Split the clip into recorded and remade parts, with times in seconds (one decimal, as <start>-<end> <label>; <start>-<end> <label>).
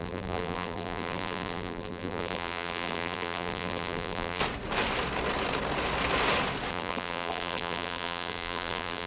0.0-4.4 remade; 4.4-6.7 recorded; 6.7-9.1 remade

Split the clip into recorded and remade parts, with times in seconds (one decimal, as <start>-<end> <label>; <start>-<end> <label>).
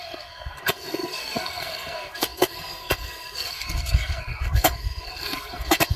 0.0-6.0 remade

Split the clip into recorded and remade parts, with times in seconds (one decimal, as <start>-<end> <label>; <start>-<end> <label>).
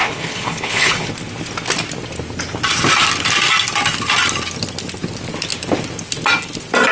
0.0-1.1 remade; 1.1-6.9 recorded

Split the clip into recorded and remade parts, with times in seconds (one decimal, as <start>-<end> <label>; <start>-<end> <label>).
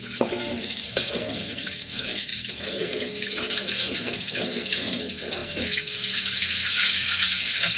0.0-7.8 remade